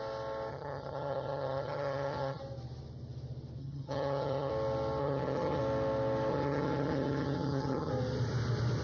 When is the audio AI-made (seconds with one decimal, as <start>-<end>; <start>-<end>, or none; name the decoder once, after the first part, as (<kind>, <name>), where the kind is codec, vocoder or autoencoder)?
0.5-2.4 (vocoder, HiFi-GAN); 3.6-4.5; 5.0-5.6; 6.3-7.9